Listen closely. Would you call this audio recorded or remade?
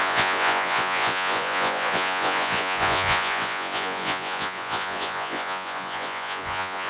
remade